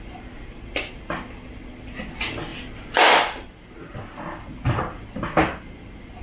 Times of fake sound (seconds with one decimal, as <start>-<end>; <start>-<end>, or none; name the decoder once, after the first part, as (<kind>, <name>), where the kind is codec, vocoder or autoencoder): none